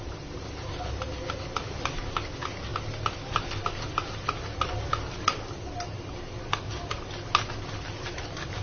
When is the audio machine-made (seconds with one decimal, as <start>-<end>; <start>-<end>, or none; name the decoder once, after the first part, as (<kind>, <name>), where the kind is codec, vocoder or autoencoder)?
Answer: none

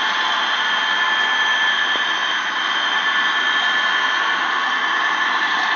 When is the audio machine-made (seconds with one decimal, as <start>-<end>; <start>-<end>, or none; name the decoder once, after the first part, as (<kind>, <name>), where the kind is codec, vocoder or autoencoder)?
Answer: none

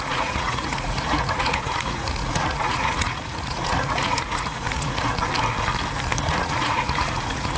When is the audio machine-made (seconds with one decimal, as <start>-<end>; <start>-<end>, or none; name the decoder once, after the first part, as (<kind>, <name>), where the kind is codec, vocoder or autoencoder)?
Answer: 0.0-5.1 (vocoder, Vocos); 6.3-7.6